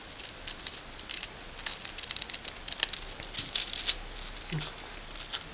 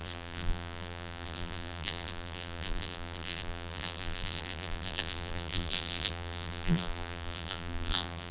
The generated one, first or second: second